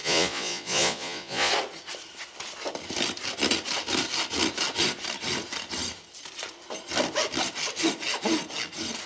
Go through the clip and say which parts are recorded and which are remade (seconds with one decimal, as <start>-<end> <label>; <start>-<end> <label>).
0.0-1.5 remade; 1.5-9.1 recorded